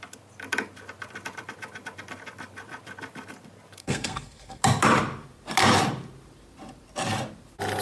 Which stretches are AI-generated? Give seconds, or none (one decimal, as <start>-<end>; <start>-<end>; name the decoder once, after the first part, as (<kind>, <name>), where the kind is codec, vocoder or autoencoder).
3.8-4.6 (codec, SNAC)